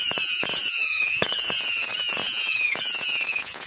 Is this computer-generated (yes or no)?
yes